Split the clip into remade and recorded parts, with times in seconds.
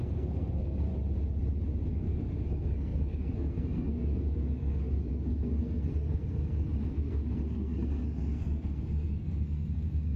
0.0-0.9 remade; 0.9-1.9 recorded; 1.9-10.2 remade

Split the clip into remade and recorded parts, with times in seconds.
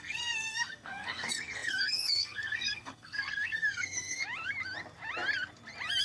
0.0-4.2 remade; 4.2-6.0 recorded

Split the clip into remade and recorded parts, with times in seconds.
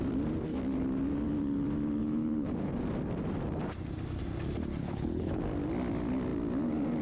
0.0-2.0 recorded; 2.0-2.7 remade; 2.7-4.8 recorded; 4.8-5.4 remade; 5.4-7.0 recorded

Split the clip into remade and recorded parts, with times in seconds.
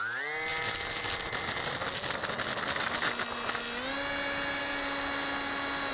0.0-5.9 recorded